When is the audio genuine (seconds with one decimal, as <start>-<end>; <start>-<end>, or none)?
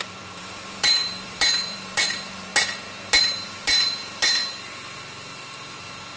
2.5-3.2; 4.4-6.2